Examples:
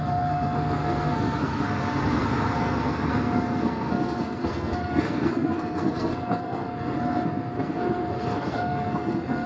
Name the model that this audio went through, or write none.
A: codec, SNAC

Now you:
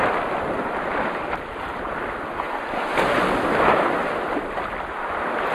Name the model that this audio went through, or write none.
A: none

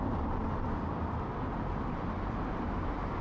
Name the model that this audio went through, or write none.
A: none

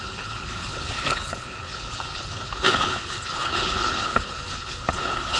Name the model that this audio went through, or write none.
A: codec, HILCodec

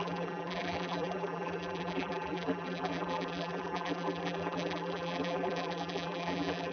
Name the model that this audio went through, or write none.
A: vocoder, BigVGAN v2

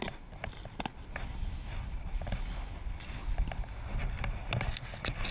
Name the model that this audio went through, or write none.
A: none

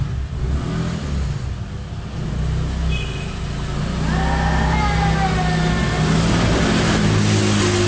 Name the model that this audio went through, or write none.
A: none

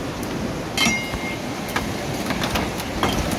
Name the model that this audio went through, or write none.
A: none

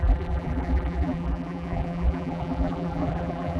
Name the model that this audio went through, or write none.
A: vocoder, BigVGAN v2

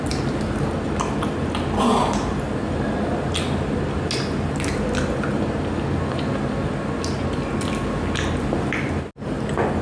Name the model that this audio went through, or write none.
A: none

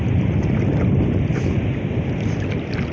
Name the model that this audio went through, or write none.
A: none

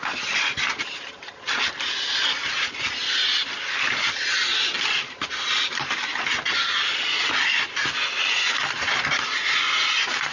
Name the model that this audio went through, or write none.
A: none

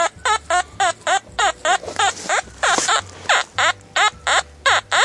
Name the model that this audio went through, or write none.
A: none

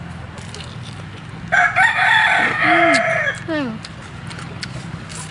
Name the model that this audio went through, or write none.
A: none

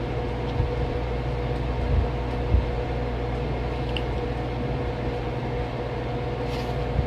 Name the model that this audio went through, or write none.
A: none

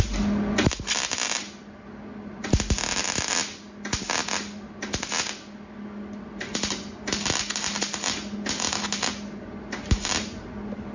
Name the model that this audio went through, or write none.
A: none